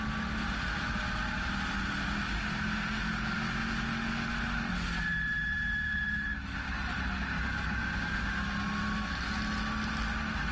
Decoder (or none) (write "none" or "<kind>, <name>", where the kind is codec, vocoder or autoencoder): none